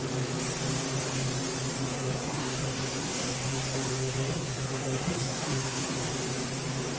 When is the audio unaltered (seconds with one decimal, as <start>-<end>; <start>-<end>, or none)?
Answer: 0.0-1.9; 6.1-7.0

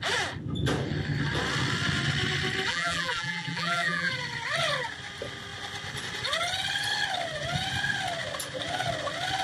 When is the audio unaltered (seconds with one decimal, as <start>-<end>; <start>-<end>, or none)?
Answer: 0.0-2.7; 4.1-9.4

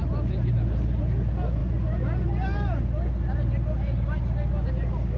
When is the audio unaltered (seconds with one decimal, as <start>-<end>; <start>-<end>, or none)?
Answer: 0.0-5.2